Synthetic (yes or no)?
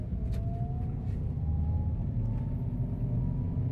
no